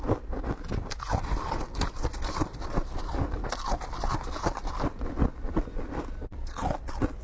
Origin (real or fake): real